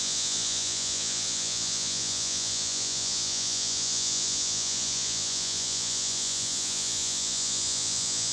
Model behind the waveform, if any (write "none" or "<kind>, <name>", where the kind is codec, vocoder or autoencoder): vocoder, Vocos